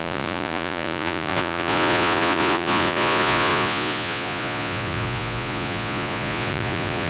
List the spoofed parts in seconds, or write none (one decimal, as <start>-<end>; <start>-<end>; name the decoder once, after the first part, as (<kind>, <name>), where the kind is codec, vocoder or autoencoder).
0.0-7.1 (vocoder, Vocos)